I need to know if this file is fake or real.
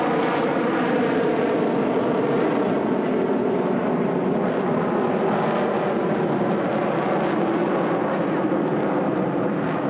real